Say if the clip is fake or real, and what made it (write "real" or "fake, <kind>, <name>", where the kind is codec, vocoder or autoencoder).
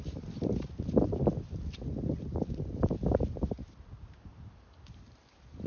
real